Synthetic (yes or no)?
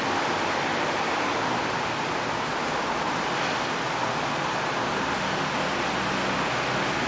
no